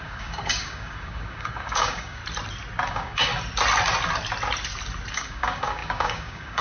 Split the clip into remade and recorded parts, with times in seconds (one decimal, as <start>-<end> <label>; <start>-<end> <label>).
0.0-2.2 remade; 2.2-2.9 recorded; 2.9-3.3 remade; 3.3-5.1 recorded; 5.1-6.6 remade